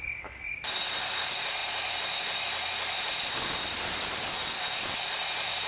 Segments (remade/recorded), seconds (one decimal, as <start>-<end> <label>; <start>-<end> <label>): 0.0-5.7 recorded